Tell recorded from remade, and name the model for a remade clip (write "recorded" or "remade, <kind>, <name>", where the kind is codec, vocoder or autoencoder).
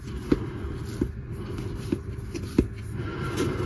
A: recorded